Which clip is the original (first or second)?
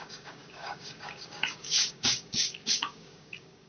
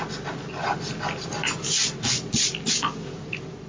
second